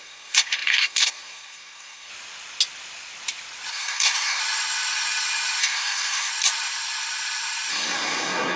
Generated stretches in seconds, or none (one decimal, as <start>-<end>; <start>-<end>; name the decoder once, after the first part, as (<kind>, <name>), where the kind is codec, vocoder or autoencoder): 0.0-2.1 (codec, SNAC); 3.7-4.4; 5.6-6.3; 7.7-8.6